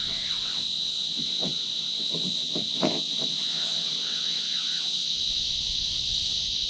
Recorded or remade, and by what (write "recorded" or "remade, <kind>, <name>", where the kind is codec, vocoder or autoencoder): remade, vocoder, WaveNeXt